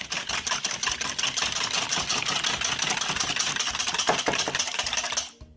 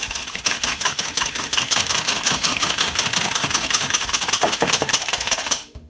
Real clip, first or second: first